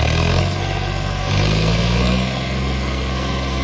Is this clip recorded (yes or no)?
no